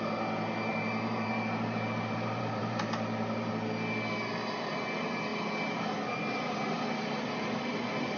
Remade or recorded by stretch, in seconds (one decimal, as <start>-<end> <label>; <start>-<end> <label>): 0.0-0.7 recorded; 0.7-3.5 remade; 3.5-8.2 recorded